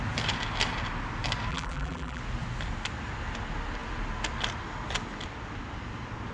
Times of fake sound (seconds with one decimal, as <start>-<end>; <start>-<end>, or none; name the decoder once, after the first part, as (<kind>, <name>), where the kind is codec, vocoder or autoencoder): 1.5-2.2 (vocoder, BigVGAN v2)

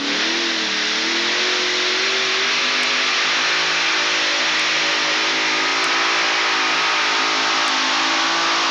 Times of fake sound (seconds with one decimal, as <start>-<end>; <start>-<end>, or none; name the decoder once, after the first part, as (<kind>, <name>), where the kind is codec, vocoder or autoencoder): none

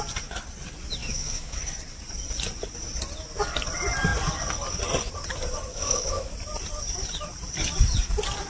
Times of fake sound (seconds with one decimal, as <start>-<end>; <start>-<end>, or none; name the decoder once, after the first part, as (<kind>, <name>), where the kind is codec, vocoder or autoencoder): 1.0-1.6 (autoencoder, DAC-VAE); 5.7-6.3

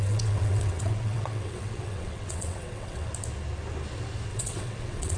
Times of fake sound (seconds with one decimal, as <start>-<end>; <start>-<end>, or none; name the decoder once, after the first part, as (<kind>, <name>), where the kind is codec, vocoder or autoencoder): 0.0-3.1 (vocoder, WaveNeXt); 4.3-5.2

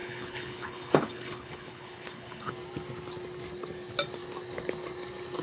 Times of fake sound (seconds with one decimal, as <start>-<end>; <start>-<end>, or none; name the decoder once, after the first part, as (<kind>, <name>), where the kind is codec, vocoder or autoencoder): 0.0-2.5 (codec, HILCodec)

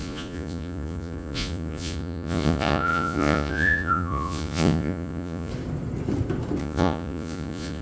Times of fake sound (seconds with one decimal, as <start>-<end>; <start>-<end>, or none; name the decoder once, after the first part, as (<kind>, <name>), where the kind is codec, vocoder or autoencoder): 0.0-5.5 (vocoder, Vocos); 6.6-7.8

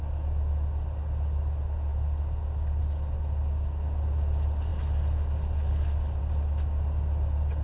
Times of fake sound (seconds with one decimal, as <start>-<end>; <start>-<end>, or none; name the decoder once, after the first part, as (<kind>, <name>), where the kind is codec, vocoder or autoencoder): none